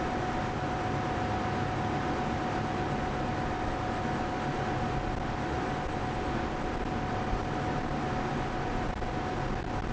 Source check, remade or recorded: recorded